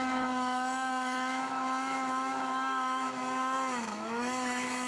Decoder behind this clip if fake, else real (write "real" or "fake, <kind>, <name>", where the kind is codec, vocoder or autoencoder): fake, autoencoder, DAC-VAE